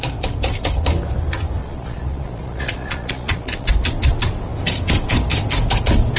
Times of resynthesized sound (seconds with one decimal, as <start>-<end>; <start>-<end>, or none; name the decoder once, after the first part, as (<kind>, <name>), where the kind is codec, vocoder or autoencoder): 1.6-3.8 (vocoder, Vocos)